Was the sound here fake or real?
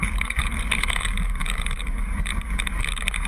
fake